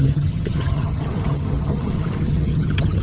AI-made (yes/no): yes